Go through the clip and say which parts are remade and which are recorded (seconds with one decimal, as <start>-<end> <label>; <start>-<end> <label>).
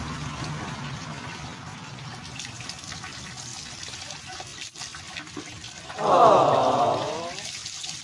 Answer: 0.0-3.5 remade; 3.5-4.1 recorded; 4.1-8.0 remade